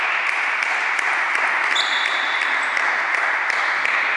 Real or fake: real